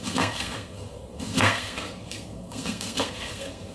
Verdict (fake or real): fake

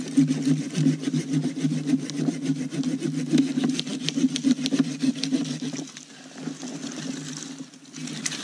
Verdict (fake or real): real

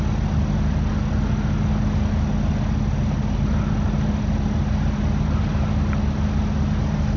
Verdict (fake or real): real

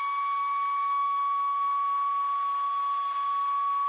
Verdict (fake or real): real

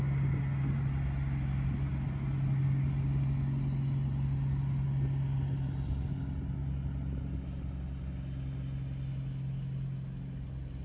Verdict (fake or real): real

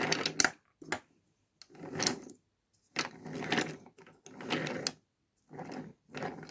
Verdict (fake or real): real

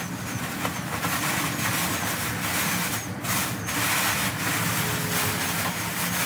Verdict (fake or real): real